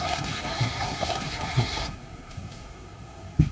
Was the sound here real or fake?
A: fake